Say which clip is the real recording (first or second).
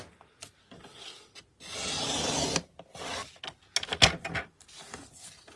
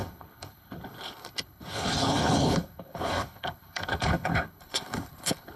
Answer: first